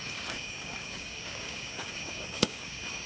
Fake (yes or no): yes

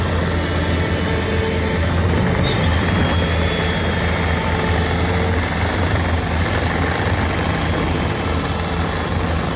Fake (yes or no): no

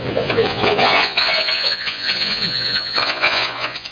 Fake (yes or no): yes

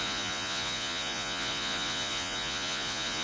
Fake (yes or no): yes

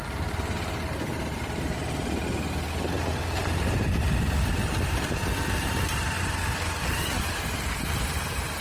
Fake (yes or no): no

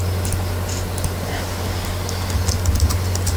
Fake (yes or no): no